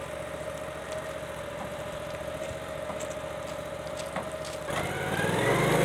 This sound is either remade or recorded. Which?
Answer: recorded